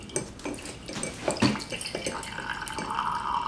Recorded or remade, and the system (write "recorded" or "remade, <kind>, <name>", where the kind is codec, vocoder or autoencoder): recorded